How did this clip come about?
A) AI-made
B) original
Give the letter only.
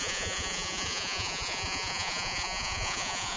A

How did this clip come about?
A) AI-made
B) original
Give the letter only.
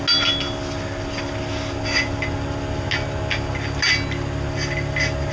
B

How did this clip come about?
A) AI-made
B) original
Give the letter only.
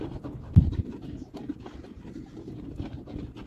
B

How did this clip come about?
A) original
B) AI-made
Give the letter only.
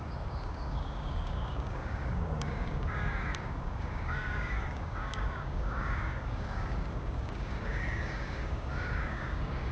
B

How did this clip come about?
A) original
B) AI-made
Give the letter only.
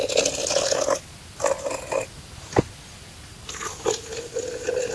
A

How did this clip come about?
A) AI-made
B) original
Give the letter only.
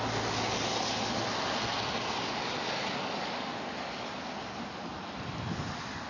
B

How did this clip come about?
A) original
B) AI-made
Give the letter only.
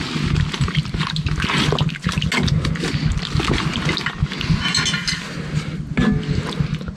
A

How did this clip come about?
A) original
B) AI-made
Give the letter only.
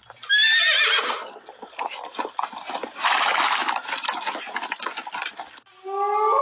A